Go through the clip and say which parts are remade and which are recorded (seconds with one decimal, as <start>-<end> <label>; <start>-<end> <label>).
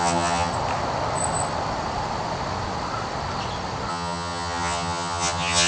0.0-0.5 remade; 0.5-3.9 recorded; 3.9-5.7 remade